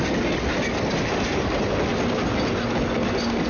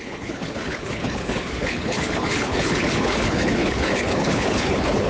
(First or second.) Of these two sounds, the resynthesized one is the second